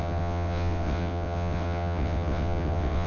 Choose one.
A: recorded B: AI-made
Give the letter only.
B